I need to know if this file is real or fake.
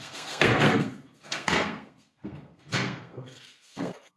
fake